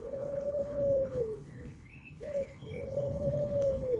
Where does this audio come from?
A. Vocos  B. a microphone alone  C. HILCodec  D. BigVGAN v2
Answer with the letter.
C